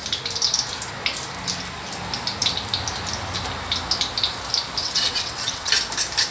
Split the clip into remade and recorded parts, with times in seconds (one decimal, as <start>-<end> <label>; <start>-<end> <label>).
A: 0.0-4.8 recorded; 4.8-5.7 remade; 5.7-6.3 recorded